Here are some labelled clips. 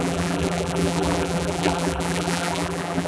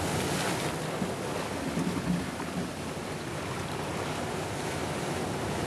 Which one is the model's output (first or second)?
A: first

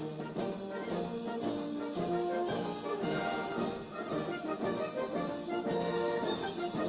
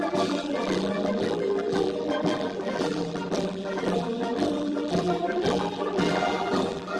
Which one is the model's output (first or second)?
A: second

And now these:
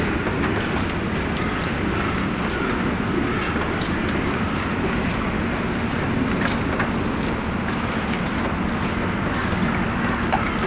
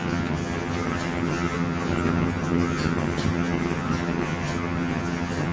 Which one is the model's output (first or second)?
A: second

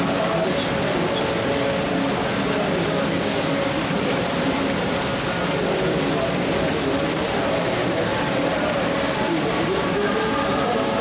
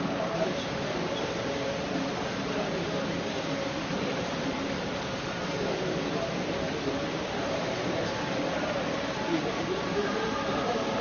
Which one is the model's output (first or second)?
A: second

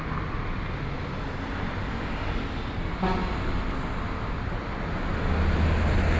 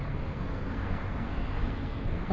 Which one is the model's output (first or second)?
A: second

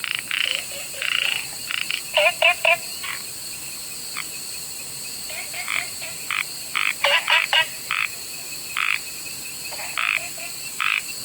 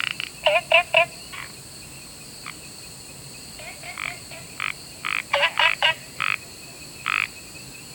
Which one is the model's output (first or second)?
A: first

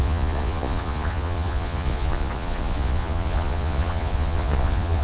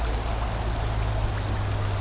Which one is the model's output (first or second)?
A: first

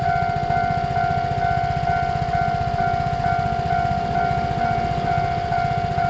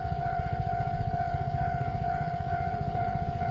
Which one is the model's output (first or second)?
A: second